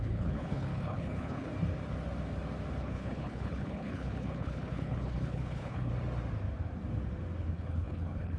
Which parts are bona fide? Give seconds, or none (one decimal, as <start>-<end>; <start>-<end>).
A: 1.5-2.8; 5.9-7.4

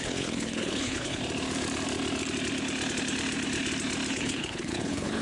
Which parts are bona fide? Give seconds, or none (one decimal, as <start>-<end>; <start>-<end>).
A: 1.2-4.1